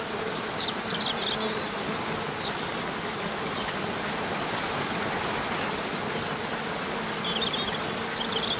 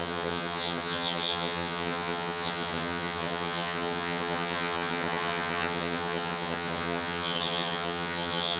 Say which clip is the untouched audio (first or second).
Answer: first